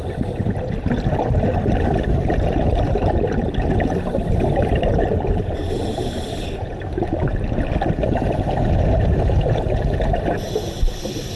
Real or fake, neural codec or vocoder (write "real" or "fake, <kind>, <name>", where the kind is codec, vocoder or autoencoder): real